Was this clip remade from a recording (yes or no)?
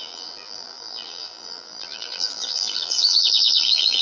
yes